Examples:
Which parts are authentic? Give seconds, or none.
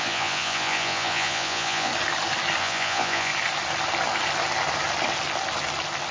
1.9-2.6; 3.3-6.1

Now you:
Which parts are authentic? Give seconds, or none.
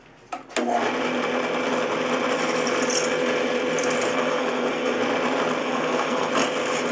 0.0-4.1; 5.0-5.6; 6.3-6.9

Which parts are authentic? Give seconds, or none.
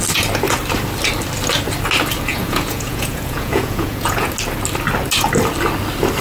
0.0-2.3; 4.3-6.2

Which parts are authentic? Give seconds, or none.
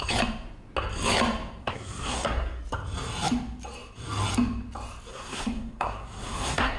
0.0-1.6; 2.6-5.1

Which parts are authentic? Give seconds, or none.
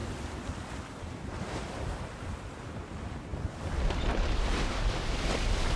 0.0-0.5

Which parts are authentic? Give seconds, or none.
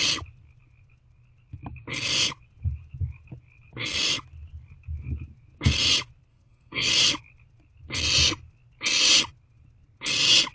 0.0-6.3; 6.9-10.5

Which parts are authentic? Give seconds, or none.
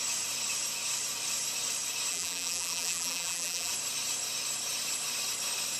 0.0-2.1; 3.7-5.8